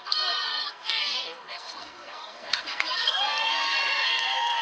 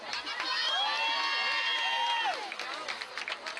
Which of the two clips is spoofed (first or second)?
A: first